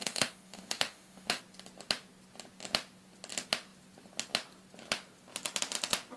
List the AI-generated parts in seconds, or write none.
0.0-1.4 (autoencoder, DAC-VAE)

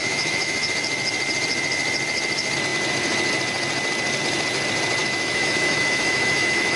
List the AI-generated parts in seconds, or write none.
0.0-0.7 (autoencoder, DAC-VAE); 5.0-6.8

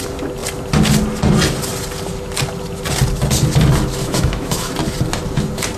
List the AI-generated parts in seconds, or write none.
4.0-4.7 (autoencoder, DAC-VAE)

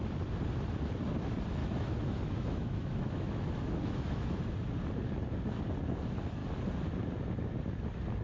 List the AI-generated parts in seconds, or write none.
1.6-4.5 (autoencoder, DAC-VAE)

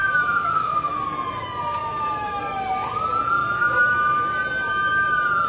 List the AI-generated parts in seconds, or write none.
0.0-0.7 (autoencoder, DAC-VAE); 1.8-2.4

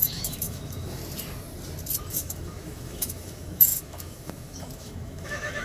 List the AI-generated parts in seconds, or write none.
0.0-1.0 (autoencoder, DAC-VAE); 2.1-5.6

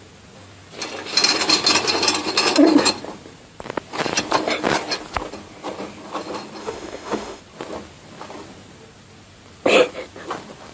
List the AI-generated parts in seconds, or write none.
6.6-7.4 (autoencoder, DAC-VAE)

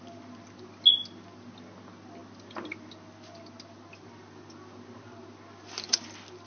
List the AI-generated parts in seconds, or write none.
none